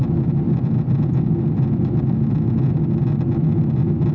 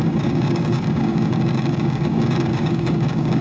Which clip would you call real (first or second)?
first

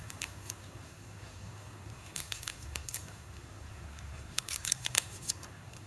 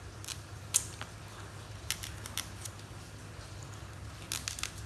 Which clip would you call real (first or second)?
second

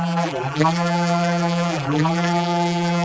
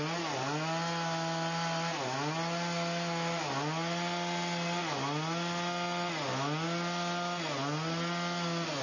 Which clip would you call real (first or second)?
second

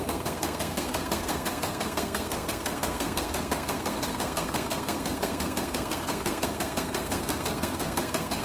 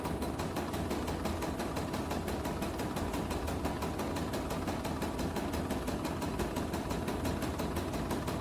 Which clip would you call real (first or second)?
second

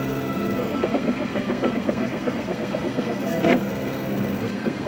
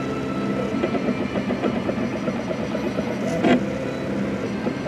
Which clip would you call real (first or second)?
second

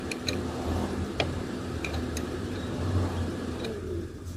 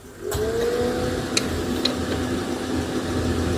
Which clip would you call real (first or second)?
second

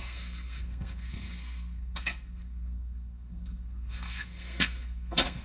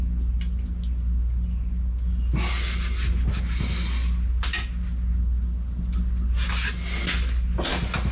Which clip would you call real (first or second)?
second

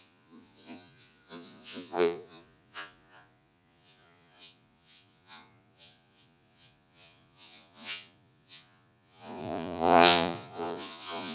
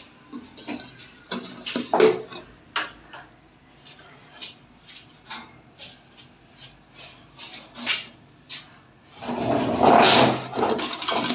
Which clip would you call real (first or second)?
second